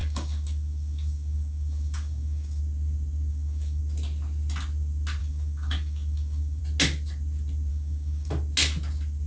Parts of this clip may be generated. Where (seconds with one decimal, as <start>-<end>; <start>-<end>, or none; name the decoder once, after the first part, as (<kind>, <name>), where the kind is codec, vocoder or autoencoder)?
0.0-2.6 (codec, DAC); 3.3-3.8; 5.2-6.6; 7.7-8.3